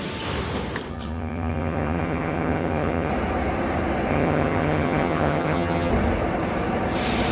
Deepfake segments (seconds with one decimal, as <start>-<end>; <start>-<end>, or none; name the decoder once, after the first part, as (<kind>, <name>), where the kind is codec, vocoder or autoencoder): 0.9-3.1 (vocoder, HiFi-GAN); 4.1-5.9